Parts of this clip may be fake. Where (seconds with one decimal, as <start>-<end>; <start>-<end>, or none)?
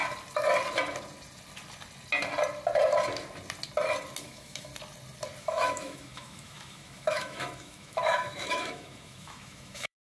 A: 4.2-4.7; 5.4-10.1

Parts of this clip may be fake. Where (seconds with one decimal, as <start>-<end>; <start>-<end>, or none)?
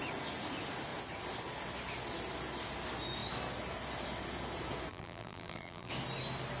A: 4.9-5.9